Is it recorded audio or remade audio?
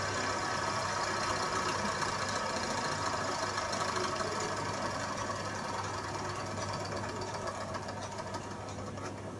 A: recorded